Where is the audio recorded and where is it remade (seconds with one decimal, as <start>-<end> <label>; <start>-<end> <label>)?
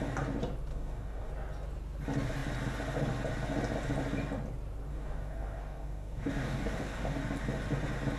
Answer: 0.0-0.7 recorded; 0.7-1.3 remade; 1.3-4.9 recorded; 4.9-7.2 remade; 7.2-8.2 recorded